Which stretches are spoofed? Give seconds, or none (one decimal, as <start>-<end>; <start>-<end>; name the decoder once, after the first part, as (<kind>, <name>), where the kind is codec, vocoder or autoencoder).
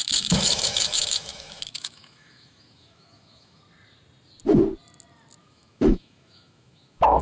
0.0-3.6 (autoencoder, DAC-VAE); 5.4-7.2